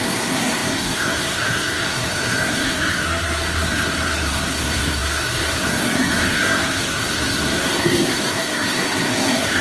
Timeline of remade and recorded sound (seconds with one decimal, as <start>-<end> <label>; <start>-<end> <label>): 0.0-9.6 remade